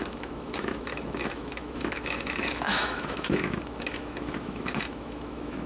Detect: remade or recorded remade